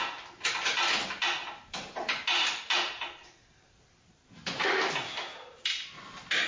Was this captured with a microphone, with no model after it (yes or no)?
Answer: yes